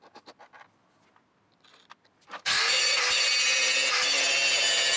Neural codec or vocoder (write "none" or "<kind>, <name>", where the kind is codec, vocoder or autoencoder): none